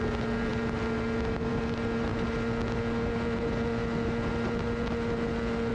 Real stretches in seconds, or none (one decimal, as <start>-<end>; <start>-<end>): 0.0-5.7